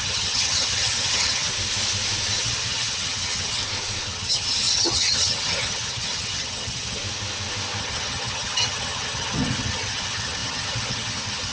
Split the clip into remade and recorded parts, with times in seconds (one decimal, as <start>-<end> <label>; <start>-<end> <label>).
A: 0.0-1.5 remade; 1.5-2.4 recorded; 2.4-3.6 remade; 3.6-4.1 recorded; 4.1-7.0 remade; 7.0-7.8 recorded; 7.8-11.5 remade